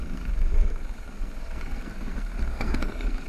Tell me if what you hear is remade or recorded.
remade